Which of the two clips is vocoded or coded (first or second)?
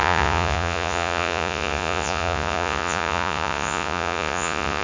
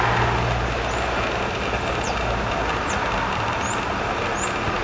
first